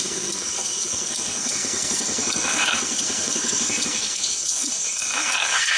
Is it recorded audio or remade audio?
remade